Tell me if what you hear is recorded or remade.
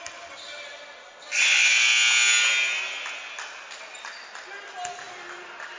recorded